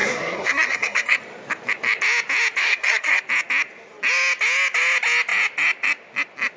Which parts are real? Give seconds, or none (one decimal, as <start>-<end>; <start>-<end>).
1.2-2.6; 3.2-6.6